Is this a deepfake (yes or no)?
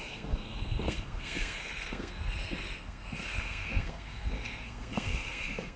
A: yes